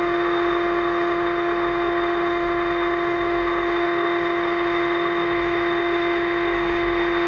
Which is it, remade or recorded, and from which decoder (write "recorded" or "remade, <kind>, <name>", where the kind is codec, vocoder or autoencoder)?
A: remade, autoencoder, DAC-VAE